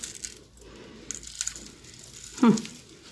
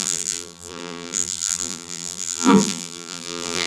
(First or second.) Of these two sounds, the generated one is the second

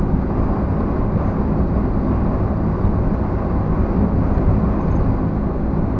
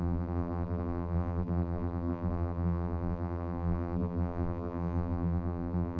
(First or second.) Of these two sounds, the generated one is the second